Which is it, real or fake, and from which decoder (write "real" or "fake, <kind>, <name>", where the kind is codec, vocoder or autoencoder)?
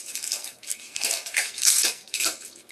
fake, codec, SNAC